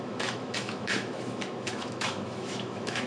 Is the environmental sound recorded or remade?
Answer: remade